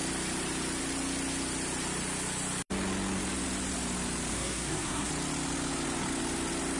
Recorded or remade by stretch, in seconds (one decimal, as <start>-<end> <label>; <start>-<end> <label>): 0.0-4.3 recorded; 4.3-5.1 remade; 5.1-6.8 recorded